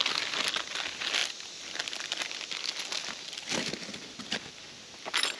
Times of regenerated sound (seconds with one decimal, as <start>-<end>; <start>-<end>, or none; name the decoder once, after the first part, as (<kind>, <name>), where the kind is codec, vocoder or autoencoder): none